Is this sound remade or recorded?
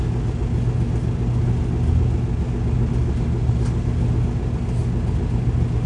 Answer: recorded